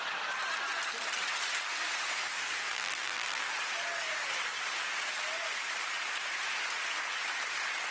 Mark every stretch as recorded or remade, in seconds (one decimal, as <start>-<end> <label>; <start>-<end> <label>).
0.0-2.7 recorded; 2.7-3.5 remade; 3.5-7.9 recorded